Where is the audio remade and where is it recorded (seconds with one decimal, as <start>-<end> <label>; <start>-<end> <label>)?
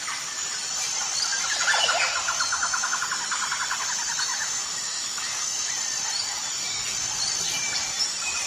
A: 0.0-2.5 recorded; 2.5-3.0 remade; 3.0-4.3 recorded; 4.3-5.7 remade; 5.7-8.5 recorded